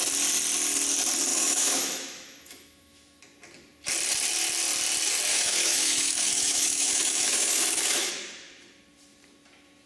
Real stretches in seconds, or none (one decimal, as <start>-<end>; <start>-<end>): 0.0-1.3; 3.2-5.3; 8.1-9.9